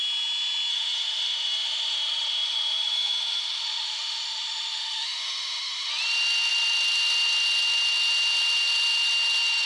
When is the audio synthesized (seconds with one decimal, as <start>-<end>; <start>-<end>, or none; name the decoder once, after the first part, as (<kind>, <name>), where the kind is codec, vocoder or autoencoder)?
0.7-5.9 (autoencoder, DAC-VAE)